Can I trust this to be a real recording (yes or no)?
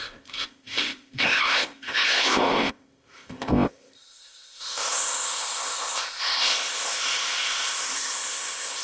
no